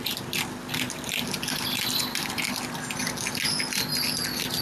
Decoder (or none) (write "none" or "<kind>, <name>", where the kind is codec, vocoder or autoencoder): none